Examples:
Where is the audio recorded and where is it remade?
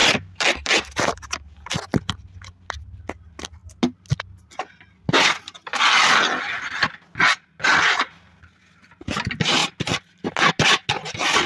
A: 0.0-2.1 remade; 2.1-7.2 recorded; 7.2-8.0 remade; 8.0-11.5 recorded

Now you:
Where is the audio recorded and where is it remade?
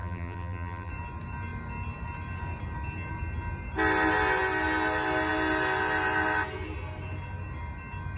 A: 0.0-0.9 remade; 0.9-8.2 recorded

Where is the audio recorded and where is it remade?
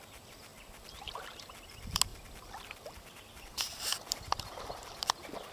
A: 0.0-0.5 recorded; 0.5-1.2 remade; 1.2-2.1 recorded; 2.1-5.1 remade; 5.1-5.5 recorded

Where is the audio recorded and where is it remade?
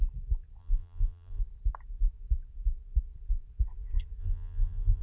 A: 0.0-0.6 recorded; 0.6-1.4 remade; 1.4-4.2 recorded; 4.2-5.0 remade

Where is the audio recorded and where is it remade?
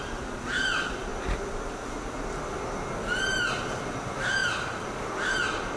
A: 0.0-4.4 recorded; 4.4-5.8 remade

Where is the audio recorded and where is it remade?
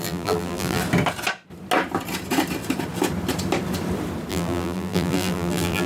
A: 0.0-0.8 remade; 0.8-4.3 recorded; 4.3-5.9 remade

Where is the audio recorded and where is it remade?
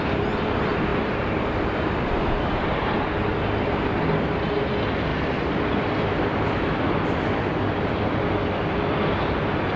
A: 0.0-0.9 recorded; 0.9-1.4 remade; 1.4-9.8 recorded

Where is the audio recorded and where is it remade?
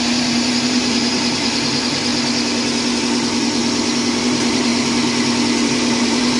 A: 0.0-2.1 remade; 2.1-3.0 recorded; 3.0-3.6 remade; 3.6-4.2 recorded; 4.2-4.7 remade; 4.7-5.7 recorded; 5.7-6.4 remade